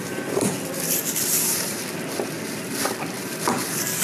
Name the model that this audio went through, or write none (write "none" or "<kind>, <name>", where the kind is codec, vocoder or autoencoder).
vocoder, BigVGAN v2